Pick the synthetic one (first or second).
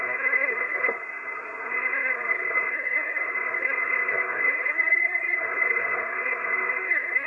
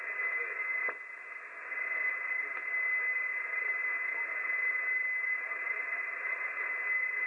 first